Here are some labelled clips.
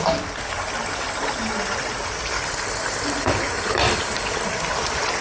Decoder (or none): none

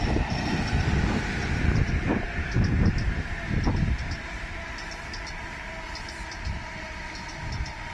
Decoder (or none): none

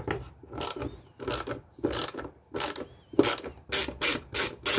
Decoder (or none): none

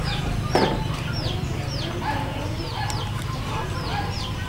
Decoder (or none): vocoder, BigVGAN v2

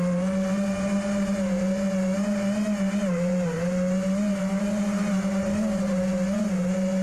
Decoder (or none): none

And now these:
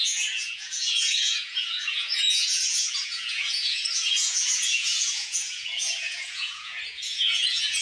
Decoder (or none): vocoder, Vocos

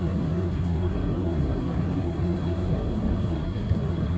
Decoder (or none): codec, SNAC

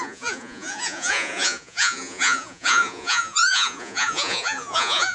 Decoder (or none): vocoder, Vocos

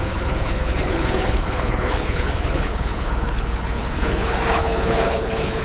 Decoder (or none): codec, HILCodec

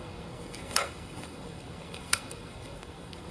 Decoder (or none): codec, SNAC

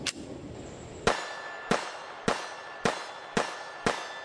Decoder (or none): none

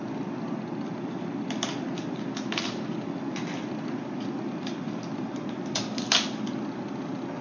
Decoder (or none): none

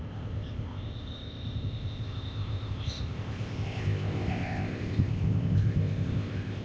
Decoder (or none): codec, ZipCodec